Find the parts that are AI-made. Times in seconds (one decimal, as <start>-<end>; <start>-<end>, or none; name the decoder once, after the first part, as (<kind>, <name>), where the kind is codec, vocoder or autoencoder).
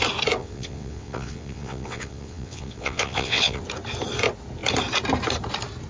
0.4-3.6 (vocoder, WaveNeXt)